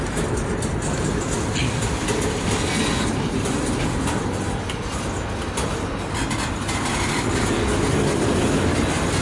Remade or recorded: recorded